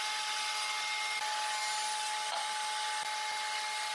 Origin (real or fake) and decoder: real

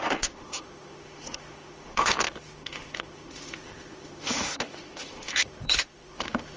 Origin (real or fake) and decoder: fake, autoencoder, DAC-VAE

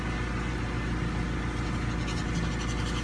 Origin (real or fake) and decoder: real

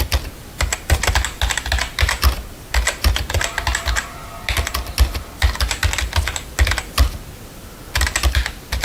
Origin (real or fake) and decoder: real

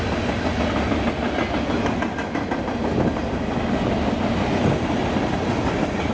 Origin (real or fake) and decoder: real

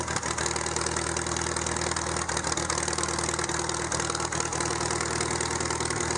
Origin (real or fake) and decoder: real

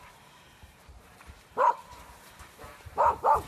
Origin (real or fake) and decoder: fake, vocoder, BigVGAN v2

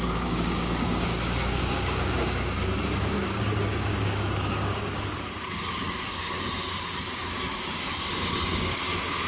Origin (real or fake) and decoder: fake, codec, DAC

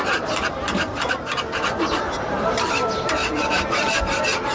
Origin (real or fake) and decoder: fake, vocoder, BigVGAN v2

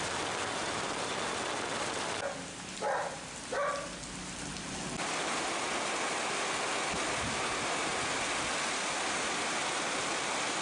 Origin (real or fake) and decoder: real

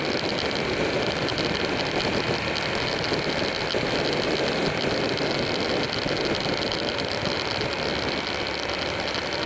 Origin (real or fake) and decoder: real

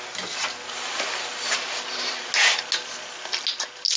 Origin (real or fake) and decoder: real